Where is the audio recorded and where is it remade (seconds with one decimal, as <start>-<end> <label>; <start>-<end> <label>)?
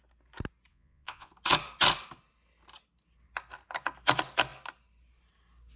0.0-0.7 recorded; 0.7-1.3 remade; 1.3-5.8 recorded